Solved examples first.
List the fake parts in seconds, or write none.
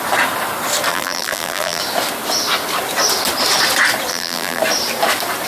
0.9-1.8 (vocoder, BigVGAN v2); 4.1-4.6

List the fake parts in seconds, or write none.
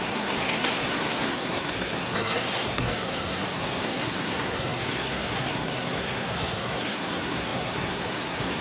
0.0-8.6 (codec, SNAC)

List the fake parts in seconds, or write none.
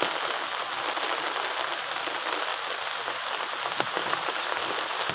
none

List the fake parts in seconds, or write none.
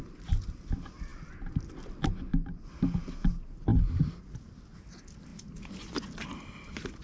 none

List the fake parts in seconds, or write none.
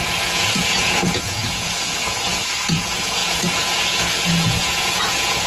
0.0-5.5 (vocoder, Vocos)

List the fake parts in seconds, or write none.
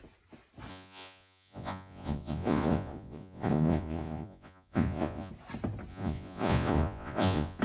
0.7-5.3 (vocoder, Vocos); 5.9-7.6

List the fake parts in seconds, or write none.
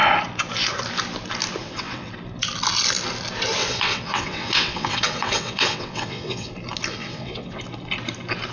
1.6-2.1 (vocoder, WaveNeXt); 3.6-6.5; 7.0-7.6